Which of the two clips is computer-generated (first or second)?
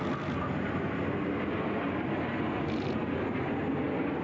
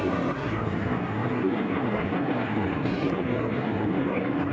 second